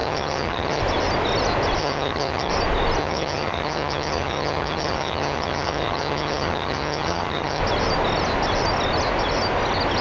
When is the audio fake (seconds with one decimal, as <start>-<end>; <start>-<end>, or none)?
0.0-0.8; 1.8-2.5; 3.0-7.6